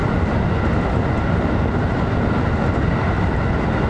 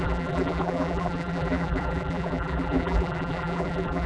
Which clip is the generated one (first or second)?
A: second